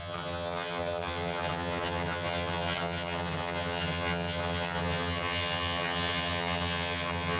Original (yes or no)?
no